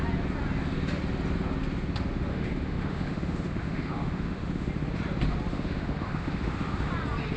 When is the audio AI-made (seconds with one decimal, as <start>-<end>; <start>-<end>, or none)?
2.3-4.7; 5.5-6.9